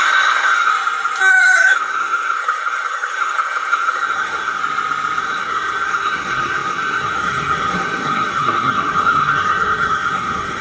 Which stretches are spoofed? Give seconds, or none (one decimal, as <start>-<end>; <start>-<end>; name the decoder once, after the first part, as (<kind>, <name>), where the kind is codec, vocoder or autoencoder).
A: 0.0-0.7 (codec, SNAC); 1.3-4.6; 5.2-10.6